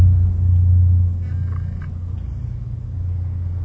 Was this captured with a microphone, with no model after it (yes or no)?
yes